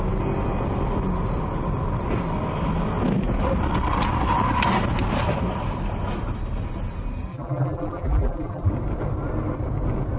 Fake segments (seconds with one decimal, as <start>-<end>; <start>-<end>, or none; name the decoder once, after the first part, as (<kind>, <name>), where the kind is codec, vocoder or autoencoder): 7.3-8.7 (vocoder, BigVGAN v2)